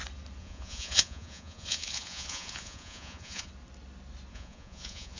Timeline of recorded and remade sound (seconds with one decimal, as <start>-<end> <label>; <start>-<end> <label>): 0.0-0.4 recorded; 0.4-3.5 remade; 3.5-4.3 recorded; 4.3-5.2 remade

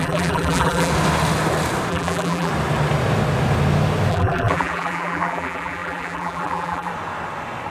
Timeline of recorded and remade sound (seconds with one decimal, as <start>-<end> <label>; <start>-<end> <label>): 0.0-0.9 remade; 0.9-1.9 recorded; 1.9-2.5 remade; 2.5-4.1 recorded; 4.1-6.9 remade; 6.9-7.7 recorded

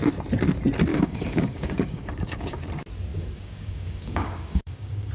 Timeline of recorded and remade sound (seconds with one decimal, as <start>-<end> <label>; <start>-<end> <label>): 0.0-0.9 recorded; 0.9-2.6 remade; 2.6-3.1 recorded; 3.1-5.1 remade

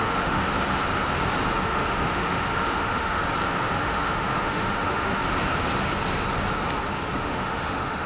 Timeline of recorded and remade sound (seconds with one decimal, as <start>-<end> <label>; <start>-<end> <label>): 0.0-0.4 remade; 0.4-1.6 recorded; 1.6-3.2 remade; 3.2-3.8 recorded; 3.8-5.2 remade; 5.2-7.2 recorded; 7.2-8.1 remade

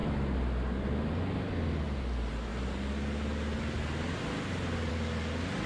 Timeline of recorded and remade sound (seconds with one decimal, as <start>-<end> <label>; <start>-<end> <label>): 0.0-5.7 recorded

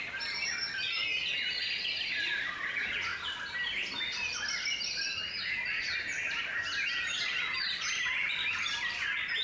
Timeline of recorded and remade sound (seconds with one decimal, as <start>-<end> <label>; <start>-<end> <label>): 0.0-9.4 recorded